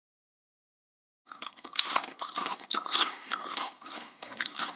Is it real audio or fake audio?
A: fake